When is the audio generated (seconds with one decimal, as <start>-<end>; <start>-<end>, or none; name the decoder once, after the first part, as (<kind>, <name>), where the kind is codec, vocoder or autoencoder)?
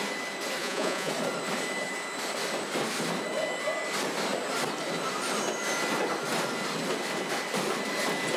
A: 0.6-1.1 (vocoder, Vocos)